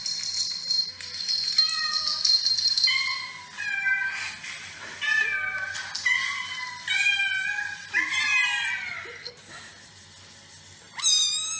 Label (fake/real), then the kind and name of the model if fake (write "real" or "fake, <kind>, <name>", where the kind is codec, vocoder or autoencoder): real